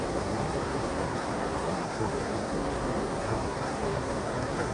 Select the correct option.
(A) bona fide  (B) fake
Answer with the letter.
B